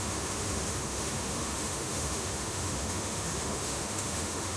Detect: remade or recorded remade